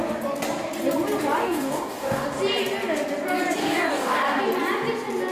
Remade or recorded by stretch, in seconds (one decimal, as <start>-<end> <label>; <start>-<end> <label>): 0.0-1.4 recorded; 1.4-2.4 remade; 2.4-3.6 recorded; 3.6-4.4 remade; 4.4-5.3 recorded